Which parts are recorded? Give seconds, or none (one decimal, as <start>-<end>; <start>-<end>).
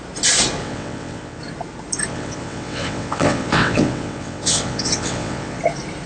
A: 0.0-0.6; 1.4-2.1; 5.6-6.1